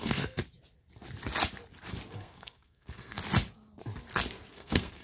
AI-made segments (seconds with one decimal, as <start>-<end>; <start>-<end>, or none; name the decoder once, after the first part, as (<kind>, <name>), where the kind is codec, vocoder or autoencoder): 0.0-0.4 (codec, SNAC); 2.1-3.2; 4.5-5.0